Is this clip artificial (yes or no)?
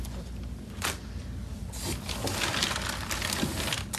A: no